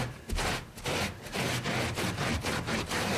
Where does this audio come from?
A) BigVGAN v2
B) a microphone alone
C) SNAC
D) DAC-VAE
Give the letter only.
B